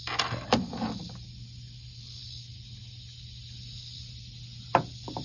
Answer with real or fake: real